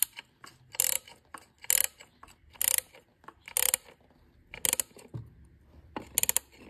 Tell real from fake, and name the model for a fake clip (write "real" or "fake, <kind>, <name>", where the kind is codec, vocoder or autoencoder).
real